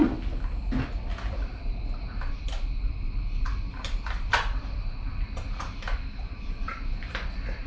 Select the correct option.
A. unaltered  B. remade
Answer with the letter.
A